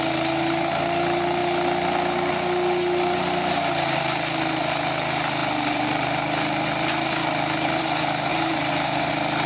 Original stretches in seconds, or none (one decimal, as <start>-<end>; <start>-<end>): 0.0-8.3; 9.1-9.5